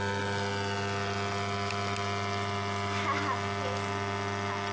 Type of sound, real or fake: real